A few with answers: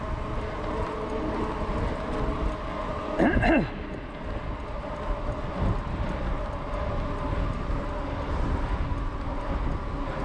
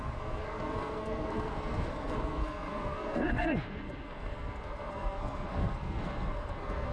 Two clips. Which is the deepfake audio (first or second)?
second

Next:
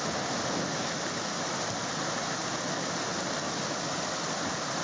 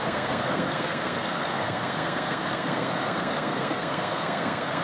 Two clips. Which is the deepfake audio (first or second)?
second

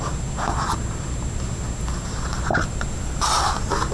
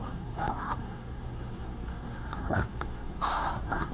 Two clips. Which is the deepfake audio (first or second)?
second